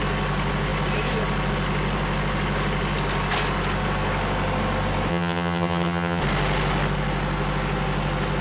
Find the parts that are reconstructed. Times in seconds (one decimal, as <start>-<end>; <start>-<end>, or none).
5.1-6.2